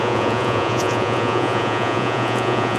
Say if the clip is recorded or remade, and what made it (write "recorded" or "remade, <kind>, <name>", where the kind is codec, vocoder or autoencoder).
remade, vocoder, Vocos